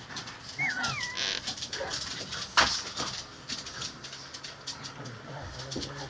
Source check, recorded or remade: recorded